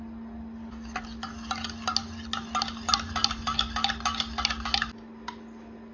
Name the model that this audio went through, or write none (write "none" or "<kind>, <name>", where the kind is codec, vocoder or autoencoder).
none